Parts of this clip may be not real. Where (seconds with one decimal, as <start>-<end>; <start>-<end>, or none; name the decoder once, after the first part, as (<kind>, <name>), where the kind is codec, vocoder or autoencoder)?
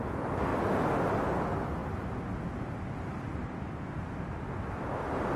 none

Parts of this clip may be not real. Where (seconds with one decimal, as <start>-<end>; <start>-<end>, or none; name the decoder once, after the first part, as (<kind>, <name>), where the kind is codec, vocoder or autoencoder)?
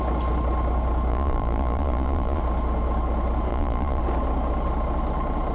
1.1-2.4 (vocoder, Vocos); 3.5-4.0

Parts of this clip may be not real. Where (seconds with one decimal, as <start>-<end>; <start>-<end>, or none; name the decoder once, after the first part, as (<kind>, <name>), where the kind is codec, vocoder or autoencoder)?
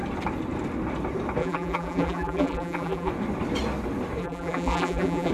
1.4-3.1 (vocoder, BigVGAN v2); 4.2-5.3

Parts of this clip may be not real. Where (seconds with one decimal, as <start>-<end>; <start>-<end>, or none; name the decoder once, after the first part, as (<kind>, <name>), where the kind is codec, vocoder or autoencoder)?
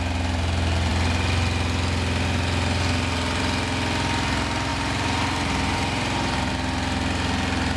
4.7-6.5 (vocoder, BigVGAN v2)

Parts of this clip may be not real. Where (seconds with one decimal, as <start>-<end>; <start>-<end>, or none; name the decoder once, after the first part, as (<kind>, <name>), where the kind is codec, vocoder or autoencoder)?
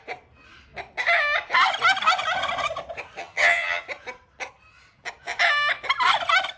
3.2-3.8 (vocoder, HiFi-GAN)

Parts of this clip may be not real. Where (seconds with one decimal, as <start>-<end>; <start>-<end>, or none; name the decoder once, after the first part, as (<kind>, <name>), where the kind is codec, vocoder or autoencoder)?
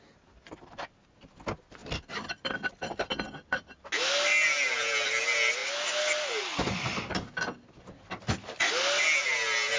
none